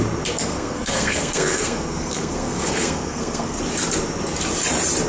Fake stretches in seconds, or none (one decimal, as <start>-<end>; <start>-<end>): 0.5-3.6

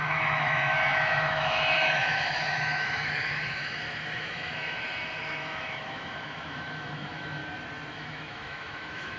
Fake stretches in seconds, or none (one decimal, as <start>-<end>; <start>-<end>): 0.0-7.4; 7.9-9.2

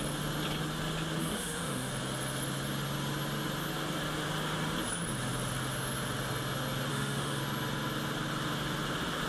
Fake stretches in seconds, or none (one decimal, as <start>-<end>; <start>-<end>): 1.2-1.9; 6.9-7.4

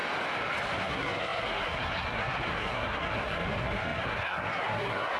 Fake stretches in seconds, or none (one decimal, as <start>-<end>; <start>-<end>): 0.8-5.2

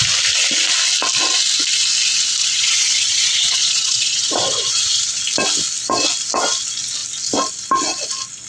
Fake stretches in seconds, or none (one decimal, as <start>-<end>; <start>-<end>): 2.4-5.0

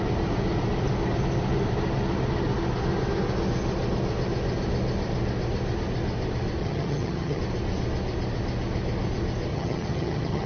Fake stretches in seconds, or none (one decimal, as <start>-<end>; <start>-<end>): 6.6-7.4; 9.5-10.5

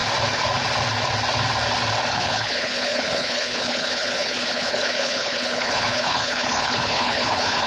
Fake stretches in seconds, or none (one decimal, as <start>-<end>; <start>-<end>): 2.1-7.7

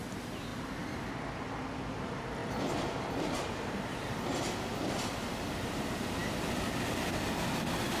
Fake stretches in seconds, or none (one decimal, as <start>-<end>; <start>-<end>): 2.4-4.2